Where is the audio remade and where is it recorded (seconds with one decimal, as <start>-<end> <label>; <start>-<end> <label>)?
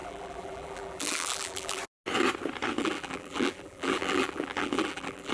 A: 0.0-1.8 remade; 1.8-2.8 recorded; 2.8-5.3 remade